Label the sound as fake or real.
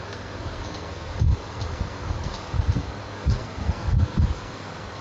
fake